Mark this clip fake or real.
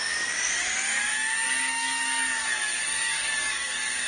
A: fake